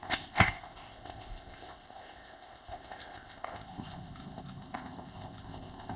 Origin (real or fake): fake